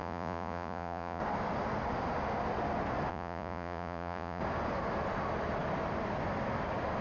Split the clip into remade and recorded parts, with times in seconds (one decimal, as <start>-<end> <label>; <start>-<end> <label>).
0.0-1.2 remade; 1.2-3.1 recorded; 3.1-4.4 remade; 4.4-7.0 recorded